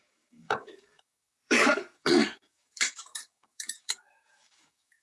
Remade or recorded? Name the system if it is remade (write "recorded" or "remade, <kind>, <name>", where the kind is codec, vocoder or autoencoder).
remade, codec, DAC